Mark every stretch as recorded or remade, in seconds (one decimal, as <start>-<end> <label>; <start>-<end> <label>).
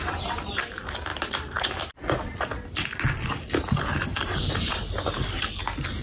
0.0-1.1 recorded; 1.1-1.9 remade; 1.9-4.1 recorded; 4.1-5.6 remade; 5.6-6.0 recorded